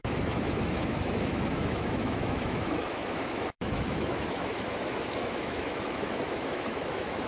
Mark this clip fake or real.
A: fake